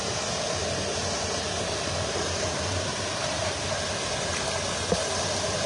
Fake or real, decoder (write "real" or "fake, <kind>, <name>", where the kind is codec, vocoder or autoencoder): real